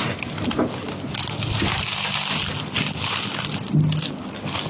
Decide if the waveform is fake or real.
real